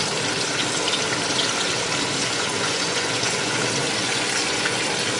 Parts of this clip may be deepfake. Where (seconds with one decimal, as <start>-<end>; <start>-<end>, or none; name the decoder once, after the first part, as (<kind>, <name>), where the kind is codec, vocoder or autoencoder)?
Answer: 2.2-3.6 (vocoder, Vocos); 4.0-4.8